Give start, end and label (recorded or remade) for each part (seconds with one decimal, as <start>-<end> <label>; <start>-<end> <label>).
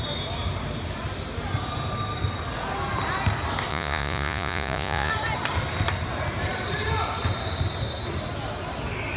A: 0.0-3.7 recorded; 3.7-5.1 remade; 5.1-9.2 recorded